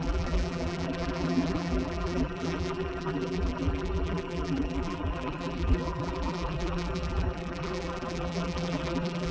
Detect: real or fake fake